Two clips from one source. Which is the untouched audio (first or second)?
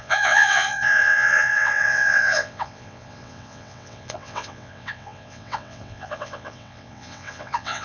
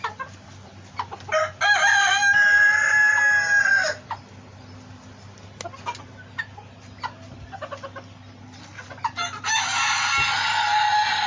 second